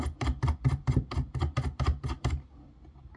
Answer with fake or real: real